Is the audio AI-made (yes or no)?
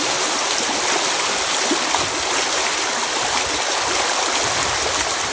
no